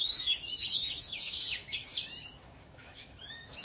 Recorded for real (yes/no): no